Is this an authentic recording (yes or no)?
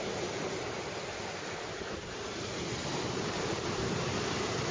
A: yes